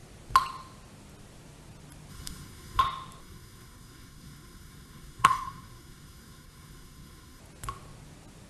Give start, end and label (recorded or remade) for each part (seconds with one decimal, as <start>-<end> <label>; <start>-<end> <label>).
0.0-2.1 recorded; 2.1-2.8 remade; 2.8-3.2 recorded; 3.2-7.4 remade; 7.4-8.5 recorded